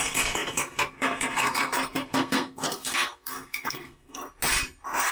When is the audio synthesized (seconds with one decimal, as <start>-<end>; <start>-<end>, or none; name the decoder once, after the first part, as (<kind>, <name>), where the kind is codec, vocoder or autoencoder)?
0.0-4.2 (codec, SNAC)